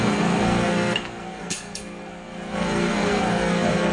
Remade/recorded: remade